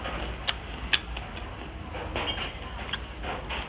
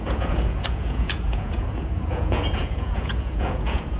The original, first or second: first